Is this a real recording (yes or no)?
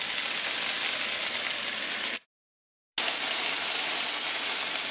yes